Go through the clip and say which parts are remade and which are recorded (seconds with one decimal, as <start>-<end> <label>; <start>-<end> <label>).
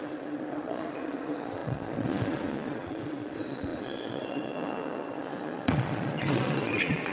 0.0-7.1 remade